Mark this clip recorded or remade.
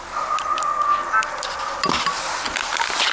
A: recorded